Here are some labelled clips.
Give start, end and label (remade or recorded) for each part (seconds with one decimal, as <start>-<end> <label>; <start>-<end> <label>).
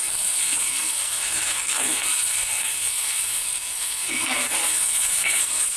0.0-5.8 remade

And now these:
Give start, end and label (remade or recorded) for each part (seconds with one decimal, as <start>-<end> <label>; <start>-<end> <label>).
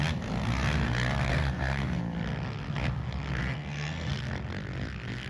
0.0-1.3 recorded; 1.3-2.0 remade; 2.0-3.4 recorded; 3.4-4.1 remade; 4.1-5.3 recorded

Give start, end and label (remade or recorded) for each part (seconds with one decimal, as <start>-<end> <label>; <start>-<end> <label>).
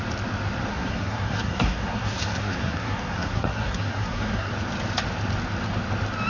0.0-0.7 recorded; 0.7-4.5 remade; 4.5-6.3 recorded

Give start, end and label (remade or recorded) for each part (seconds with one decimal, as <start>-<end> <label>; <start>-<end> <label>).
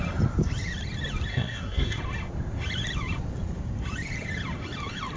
0.0-1.3 recorded; 1.3-2.0 remade; 2.0-5.2 recorded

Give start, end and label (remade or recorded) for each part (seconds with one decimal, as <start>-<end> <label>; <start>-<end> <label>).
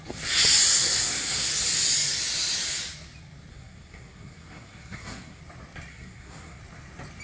0.0-0.7 recorded; 0.7-1.5 remade; 1.5-3.5 recorded; 3.5-5.4 remade; 5.4-5.9 recorded; 5.9-6.6 remade; 6.6-7.2 recorded